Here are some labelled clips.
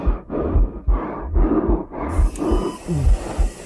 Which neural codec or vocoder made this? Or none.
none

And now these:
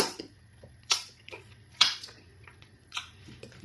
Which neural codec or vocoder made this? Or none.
vocoder, Vocos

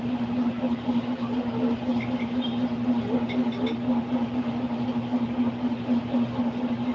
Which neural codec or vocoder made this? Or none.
none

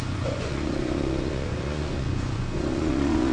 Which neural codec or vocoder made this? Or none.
vocoder, Vocos